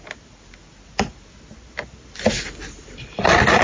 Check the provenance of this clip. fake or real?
real